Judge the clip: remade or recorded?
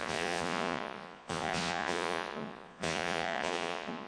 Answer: remade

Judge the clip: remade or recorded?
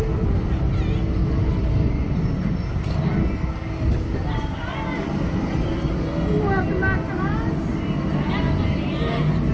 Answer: recorded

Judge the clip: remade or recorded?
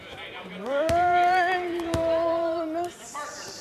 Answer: remade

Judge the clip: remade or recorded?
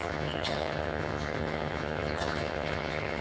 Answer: remade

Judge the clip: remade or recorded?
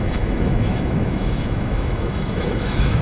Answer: remade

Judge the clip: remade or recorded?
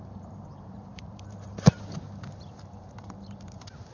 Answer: remade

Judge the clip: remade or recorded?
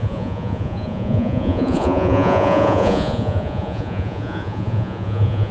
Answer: remade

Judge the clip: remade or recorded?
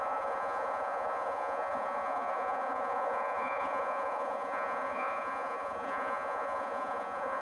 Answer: remade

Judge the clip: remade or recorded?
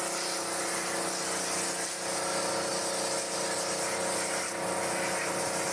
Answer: recorded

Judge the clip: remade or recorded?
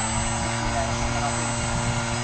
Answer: recorded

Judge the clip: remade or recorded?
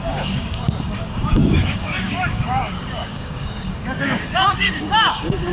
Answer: remade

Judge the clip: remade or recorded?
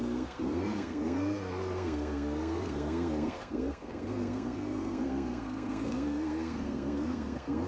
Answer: remade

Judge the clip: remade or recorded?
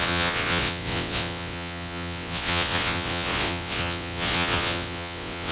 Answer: remade